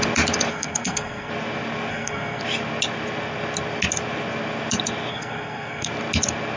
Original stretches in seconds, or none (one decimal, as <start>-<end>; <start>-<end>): 0.0-0.5; 1.3-1.9; 2.4-5.1; 5.9-6.6